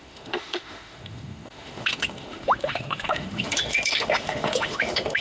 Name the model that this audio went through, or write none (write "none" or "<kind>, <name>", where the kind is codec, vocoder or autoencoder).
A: autoencoder, DAC-VAE